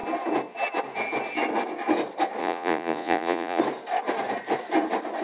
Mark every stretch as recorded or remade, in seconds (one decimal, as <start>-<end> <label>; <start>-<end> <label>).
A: 0.0-2.4 recorded; 2.4-3.6 remade; 3.6-5.2 recorded